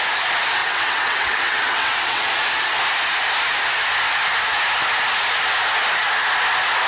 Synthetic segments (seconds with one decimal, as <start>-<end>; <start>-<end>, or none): 0.6-2.2

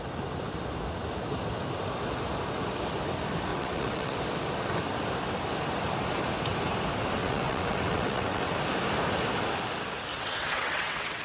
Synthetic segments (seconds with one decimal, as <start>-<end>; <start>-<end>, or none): 3.5-4.2; 7.2-8.5; 10.1-11.2

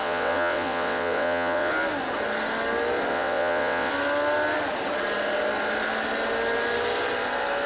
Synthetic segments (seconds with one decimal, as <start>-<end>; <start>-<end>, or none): 0.0-1.7; 3.1-3.9

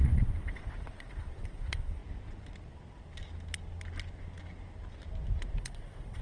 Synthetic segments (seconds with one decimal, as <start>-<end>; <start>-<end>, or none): 0.0-2.0; 5.6-6.2

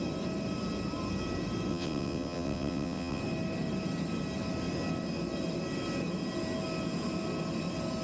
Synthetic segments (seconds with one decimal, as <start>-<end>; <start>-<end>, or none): 1.7-3.2

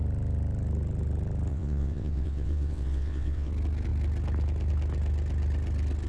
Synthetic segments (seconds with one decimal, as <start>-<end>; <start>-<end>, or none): 1.5-3.5

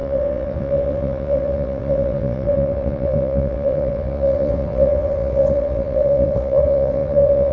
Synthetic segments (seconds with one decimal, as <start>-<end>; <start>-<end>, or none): 0.0-7.5